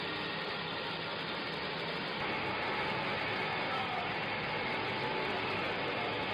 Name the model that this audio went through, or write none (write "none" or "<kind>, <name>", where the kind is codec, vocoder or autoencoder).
none